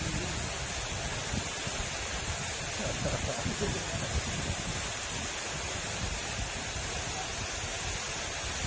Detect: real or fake real